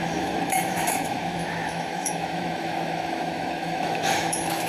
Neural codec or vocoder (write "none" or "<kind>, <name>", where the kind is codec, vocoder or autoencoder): autoencoder, DAC-VAE